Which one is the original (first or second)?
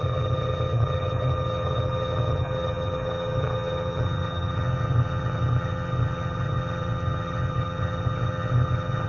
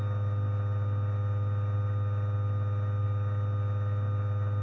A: second